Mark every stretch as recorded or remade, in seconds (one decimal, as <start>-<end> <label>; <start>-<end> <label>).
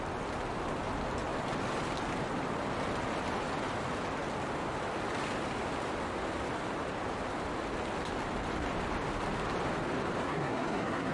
0.0-10.2 recorded; 10.2-11.1 remade